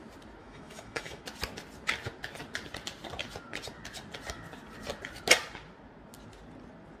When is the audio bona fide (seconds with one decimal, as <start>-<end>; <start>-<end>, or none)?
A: 0.0-0.4; 1.2-7.0